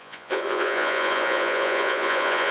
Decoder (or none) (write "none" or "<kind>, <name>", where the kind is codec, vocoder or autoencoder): vocoder, Vocos